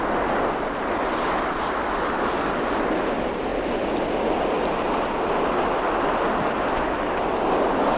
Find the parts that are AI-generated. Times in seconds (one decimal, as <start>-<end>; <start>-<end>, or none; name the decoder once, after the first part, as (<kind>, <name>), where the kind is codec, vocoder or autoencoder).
none